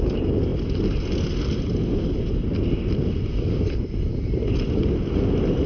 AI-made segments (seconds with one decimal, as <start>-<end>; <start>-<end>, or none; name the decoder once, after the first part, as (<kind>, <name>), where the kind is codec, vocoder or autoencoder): none